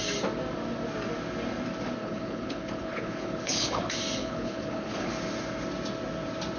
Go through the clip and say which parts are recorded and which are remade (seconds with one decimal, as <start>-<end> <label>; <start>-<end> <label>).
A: 0.0-2.0 recorded; 2.0-3.8 remade; 3.8-4.2 recorded; 4.2-5.1 remade; 5.1-6.6 recorded